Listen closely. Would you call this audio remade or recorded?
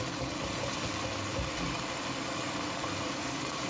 recorded